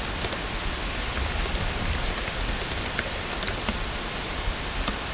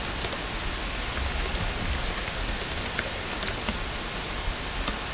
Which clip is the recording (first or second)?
second